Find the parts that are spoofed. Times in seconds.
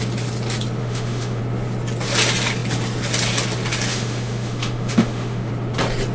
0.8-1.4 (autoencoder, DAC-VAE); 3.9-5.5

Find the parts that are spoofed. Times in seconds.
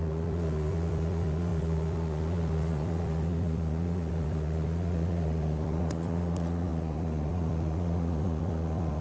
0.0-9.0 (vocoder, Vocos)